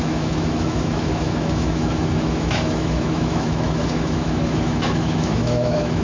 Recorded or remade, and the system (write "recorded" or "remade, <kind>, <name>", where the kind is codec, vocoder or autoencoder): remade, autoencoder, DAC-VAE